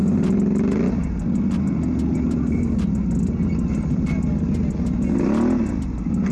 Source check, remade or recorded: recorded